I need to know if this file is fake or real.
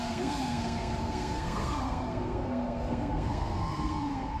fake